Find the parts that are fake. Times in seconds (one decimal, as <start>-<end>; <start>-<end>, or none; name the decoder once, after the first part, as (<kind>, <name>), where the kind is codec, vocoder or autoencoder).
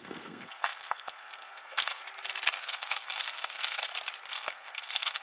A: 0.0-2.0 (codec, SNAC); 2.6-3.8; 4.3-5.2